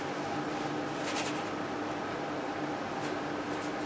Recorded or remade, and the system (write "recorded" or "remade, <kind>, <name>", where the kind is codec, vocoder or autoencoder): recorded